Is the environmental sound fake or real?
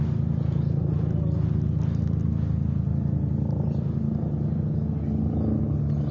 real